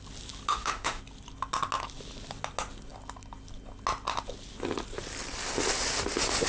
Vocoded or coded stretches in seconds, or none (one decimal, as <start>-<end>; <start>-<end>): 0.5-1.0